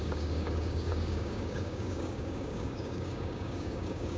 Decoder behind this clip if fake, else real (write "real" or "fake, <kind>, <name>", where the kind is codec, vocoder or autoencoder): fake, codec, DAC